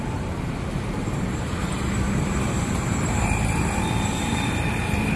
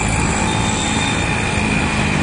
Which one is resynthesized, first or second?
first